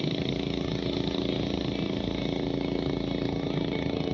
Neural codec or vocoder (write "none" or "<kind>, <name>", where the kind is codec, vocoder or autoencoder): none